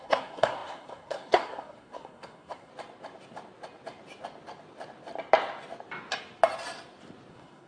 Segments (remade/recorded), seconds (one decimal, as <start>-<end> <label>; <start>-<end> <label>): 0.0-2.7 remade; 2.7-7.3 recorded; 7.3-7.7 remade